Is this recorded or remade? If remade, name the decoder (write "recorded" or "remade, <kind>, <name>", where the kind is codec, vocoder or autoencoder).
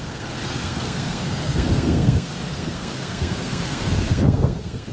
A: remade, codec, SNAC